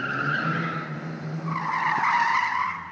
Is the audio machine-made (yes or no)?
no